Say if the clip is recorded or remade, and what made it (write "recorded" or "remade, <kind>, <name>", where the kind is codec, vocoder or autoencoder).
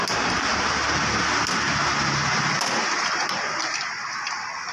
recorded